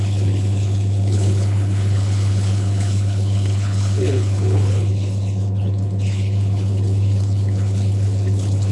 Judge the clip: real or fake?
fake